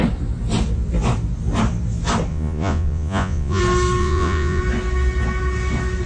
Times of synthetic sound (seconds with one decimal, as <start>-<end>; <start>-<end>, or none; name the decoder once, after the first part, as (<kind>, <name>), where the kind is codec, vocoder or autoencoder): 2.3-3.6 (vocoder, Vocos); 4.0-4.6